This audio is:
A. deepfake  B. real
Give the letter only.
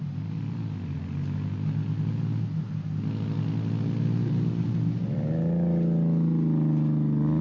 B